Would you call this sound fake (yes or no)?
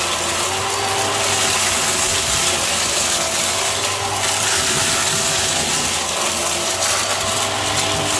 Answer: no